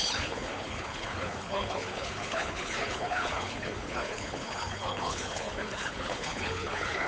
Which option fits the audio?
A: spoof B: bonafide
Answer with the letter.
A